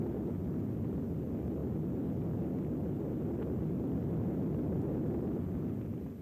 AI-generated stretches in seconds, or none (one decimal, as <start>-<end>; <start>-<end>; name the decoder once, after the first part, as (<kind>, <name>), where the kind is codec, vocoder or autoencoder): none